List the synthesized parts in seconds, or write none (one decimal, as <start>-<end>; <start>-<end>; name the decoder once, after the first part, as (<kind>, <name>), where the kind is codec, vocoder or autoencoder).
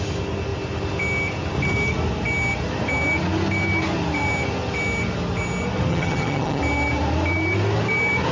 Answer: 5.9-6.6 (vocoder, HiFi-GAN)